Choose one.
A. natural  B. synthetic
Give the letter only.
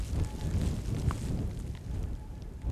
A